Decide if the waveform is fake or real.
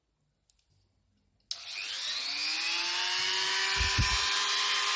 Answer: real